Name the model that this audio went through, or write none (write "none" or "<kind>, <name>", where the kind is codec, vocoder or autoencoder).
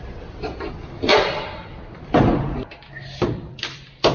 vocoder, BigVGAN v2